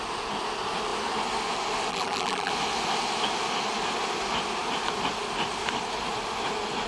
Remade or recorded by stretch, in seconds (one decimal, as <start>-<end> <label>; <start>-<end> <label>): 0.0-1.9 recorded; 1.9-2.5 remade; 2.5-6.9 recorded